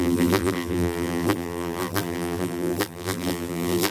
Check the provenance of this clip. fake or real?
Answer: fake